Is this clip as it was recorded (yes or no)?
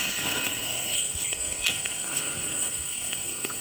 no